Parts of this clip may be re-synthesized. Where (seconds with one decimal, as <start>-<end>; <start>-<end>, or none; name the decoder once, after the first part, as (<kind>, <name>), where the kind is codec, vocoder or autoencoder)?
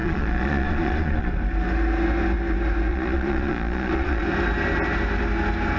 0.0-1.3 (vocoder, Vocos); 2.9-4.2